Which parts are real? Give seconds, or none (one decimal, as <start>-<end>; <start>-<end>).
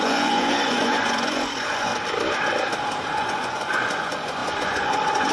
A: 1.9-3.1